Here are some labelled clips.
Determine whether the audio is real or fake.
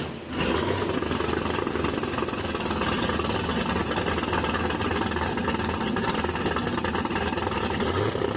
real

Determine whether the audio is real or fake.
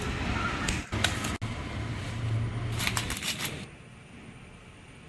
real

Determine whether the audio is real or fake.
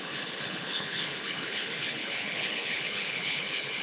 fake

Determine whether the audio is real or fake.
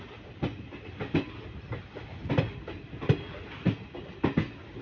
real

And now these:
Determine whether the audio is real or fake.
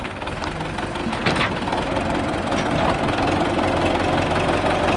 real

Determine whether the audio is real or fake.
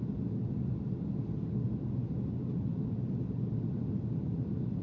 real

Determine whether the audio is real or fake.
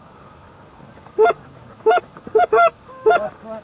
fake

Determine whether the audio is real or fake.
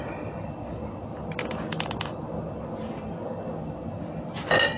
real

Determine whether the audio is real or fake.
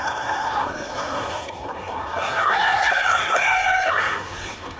fake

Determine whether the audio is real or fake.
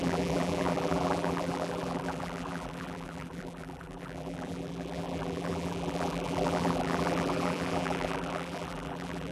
fake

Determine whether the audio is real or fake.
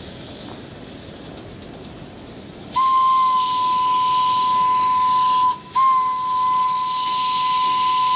real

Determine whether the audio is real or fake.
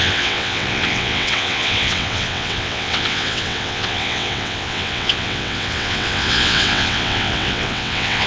fake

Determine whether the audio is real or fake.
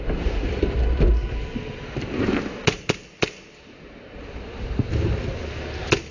real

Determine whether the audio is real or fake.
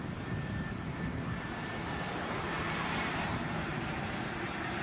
fake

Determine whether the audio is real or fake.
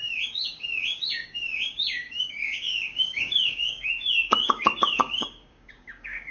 fake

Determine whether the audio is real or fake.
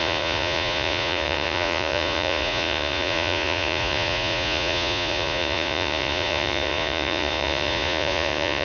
fake